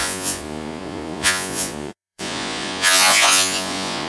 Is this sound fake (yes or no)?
yes